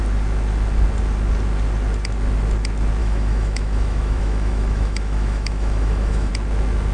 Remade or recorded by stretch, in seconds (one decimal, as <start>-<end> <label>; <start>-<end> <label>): 0.0-3.0 recorded; 3.0-6.3 remade; 6.3-6.9 recorded